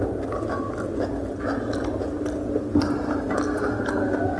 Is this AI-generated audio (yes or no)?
no